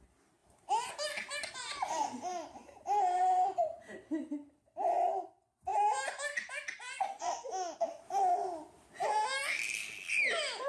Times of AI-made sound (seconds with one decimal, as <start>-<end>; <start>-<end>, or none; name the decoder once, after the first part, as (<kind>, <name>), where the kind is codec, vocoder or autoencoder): 0.4-0.9 (vocoder, BigVGAN v2); 2.3-3.2